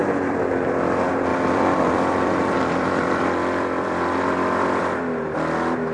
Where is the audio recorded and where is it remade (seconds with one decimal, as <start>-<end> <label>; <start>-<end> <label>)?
0.0-0.5 remade; 0.5-1.3 recorded; 1.3-4.8 remade; 4.8-5.9 recorded